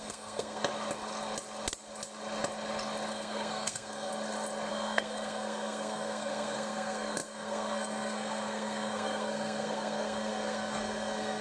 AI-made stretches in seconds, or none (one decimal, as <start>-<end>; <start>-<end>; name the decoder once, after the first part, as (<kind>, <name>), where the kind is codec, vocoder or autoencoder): 0.0-0.6 (codec, SNAC); 3.1-4.1; 4.7-11.4

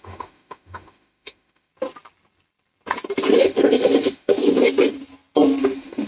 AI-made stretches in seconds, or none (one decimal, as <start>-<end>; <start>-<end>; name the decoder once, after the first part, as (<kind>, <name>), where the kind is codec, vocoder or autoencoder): 0.0-1.7 (autoencoder, DAC-VAE); 3.4-4.4; 5.6-6.1

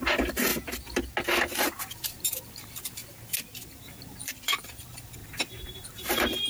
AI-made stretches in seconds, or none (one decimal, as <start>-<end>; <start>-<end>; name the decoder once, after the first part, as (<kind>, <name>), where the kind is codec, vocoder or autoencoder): 0.0-0.5 (vocoder, BigVGAN v2); 1.6-3.0; 3.7-6.5

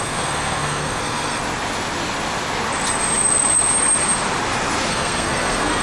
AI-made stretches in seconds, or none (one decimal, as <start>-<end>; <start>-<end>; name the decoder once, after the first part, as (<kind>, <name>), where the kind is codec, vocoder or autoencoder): 0.0-1.4 (codec, SNAC); 4.9-5.8

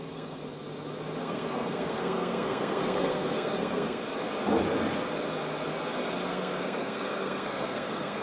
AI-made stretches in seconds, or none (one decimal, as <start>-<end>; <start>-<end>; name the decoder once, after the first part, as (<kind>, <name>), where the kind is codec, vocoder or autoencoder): 0.0-0.4 (codec, SNAC); 1.2-4.0; 6.3-8.2